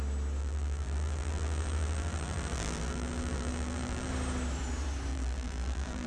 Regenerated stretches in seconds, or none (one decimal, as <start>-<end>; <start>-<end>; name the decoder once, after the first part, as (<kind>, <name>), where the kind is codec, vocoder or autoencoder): 0.4-4.1 (vocoder, BigVGAN v2); 5.1-6.1